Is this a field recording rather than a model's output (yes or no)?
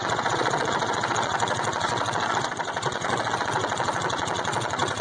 no